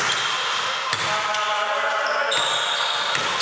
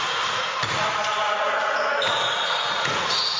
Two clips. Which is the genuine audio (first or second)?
first